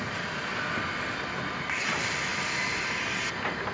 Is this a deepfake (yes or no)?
no